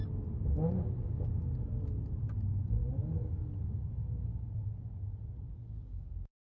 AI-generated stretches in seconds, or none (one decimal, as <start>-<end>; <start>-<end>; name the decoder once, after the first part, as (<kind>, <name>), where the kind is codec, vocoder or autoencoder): none